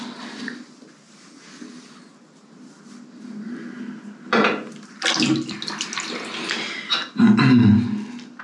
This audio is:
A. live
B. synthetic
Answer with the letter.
A